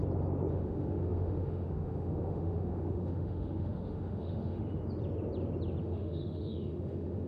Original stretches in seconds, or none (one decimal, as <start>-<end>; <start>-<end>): 0.0-0.5; 4.8-5.8